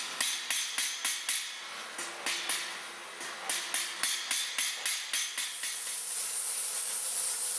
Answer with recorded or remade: recorded